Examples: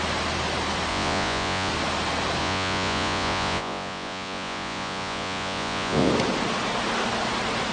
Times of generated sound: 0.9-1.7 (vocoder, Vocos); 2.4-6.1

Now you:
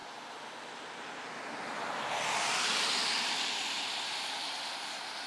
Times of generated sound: none

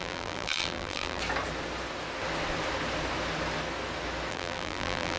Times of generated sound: 0.0-1.2 (vocoder, BigVGAN v2); 4.3-5.2

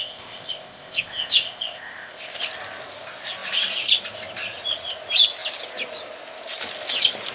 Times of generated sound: 0.0-2.4 (codec, ZipCodec)

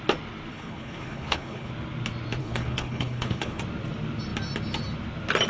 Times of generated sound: 0.5-1.7 (codec, HILCodec); 2.4-3.6

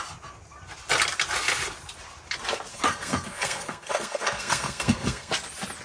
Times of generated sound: 2.7-5.3 (codec, SNAC)

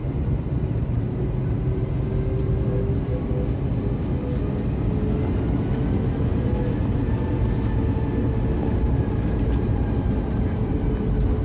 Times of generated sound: 0.0-1.3 (vocoder, BigVGAN v2); 8.7-10.9

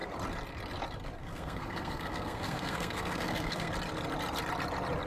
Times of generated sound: 1.2-3.7 (codec, SNAC)